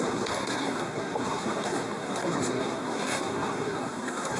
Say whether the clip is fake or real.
fake